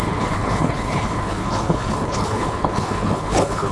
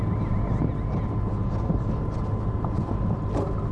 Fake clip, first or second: first